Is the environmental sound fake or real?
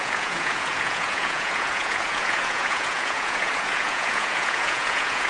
fake